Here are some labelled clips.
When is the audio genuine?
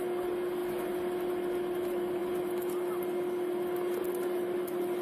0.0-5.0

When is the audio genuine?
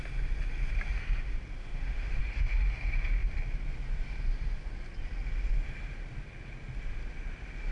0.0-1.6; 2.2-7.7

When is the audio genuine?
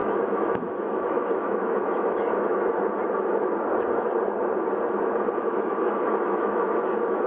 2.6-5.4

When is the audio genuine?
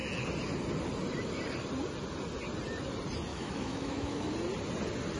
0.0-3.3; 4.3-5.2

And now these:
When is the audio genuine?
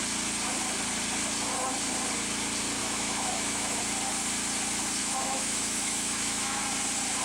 0.0-2.8; 3.8-5.0; 6.6-7.2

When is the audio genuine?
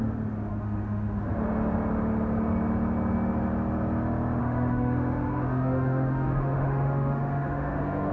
0.0-0.5; 1.2-4.4